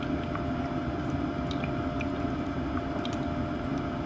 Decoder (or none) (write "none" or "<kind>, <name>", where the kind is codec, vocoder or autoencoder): none